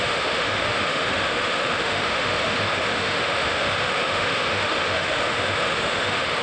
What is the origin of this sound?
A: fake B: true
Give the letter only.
A